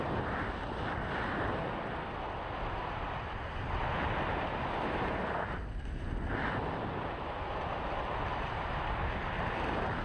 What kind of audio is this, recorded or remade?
recorded